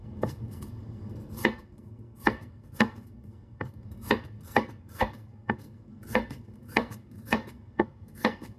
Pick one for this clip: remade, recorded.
remade